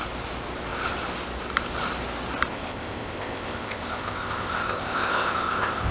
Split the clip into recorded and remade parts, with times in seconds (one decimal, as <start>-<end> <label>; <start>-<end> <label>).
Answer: 0.0-2.5 recorded; 2.5-5.9 remade